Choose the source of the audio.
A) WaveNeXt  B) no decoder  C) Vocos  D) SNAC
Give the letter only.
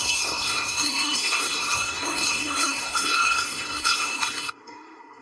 D